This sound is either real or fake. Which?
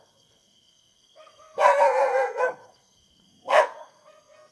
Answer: fake